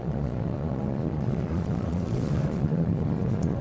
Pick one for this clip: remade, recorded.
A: remade